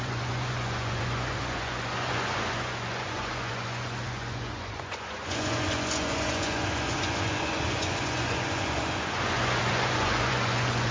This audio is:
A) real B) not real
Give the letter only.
B